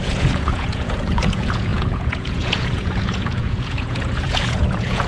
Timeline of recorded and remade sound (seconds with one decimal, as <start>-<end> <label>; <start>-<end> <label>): 0.0-5.1 remade